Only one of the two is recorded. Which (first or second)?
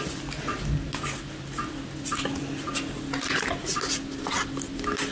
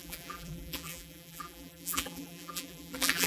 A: first